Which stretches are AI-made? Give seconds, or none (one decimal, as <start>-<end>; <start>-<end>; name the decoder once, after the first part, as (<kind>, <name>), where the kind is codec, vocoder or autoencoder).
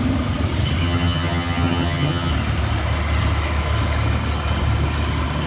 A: 0.8-2.3 (vocoder, HiFi-GAN)